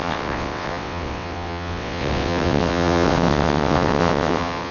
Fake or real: fake